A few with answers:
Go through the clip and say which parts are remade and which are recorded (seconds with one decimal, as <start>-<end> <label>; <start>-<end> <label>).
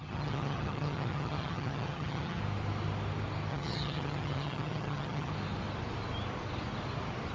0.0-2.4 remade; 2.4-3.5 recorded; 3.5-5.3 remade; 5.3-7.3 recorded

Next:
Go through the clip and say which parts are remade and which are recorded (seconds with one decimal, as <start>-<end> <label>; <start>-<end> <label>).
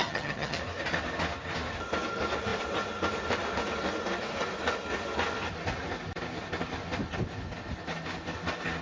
0.0-0.6 remade; 0.6-8.8 recorded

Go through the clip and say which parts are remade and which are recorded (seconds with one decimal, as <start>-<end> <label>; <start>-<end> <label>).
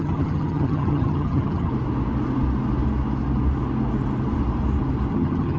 0.0-1.7 remade; 1.7-5.1 recorded; 5.1-5.6 remade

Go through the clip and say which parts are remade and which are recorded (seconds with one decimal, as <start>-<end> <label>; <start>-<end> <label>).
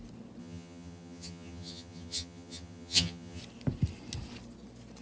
0.0-0.4 recorded; 0.4-3.4 remade; 3.4-5.0 recorded